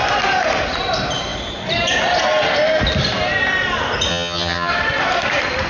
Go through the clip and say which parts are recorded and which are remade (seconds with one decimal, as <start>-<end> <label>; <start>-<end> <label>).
0.0-4.1 recorded; 4.1-4.7 remade; 4.7-5.7 recorded